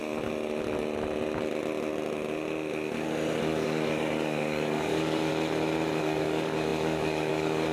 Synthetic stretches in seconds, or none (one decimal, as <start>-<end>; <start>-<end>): 3.4-5.3; 6.0-7.7